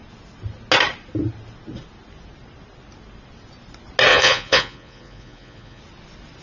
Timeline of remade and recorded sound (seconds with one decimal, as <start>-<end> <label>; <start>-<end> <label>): 0.0-4.1 recorded; 4.1-5.8 remade; 5.8-6.4 recorded